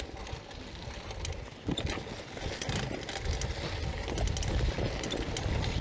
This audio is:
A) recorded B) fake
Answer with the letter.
A